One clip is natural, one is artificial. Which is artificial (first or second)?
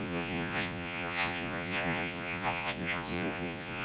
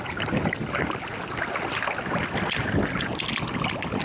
first